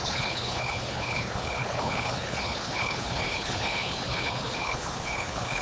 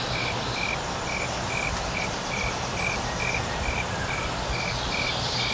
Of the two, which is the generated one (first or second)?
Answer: first